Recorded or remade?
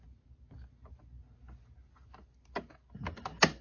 recorded